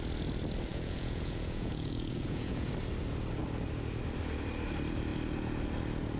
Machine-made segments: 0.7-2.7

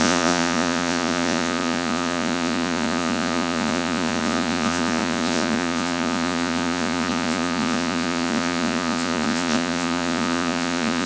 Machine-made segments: 0.0-11.1